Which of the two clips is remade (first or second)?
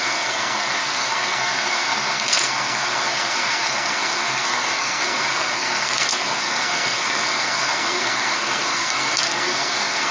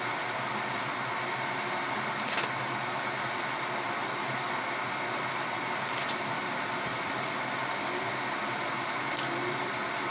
first